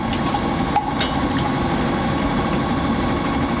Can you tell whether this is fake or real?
real